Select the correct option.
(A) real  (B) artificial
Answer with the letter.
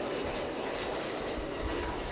A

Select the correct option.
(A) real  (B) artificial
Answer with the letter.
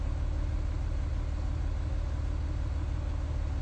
A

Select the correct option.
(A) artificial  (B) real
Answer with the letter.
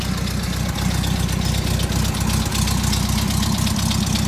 B